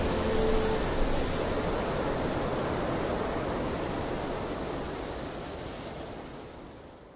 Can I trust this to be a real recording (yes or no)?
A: yes